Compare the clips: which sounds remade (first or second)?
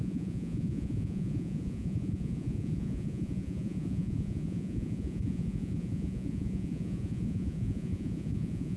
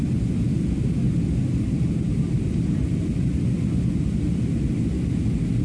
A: first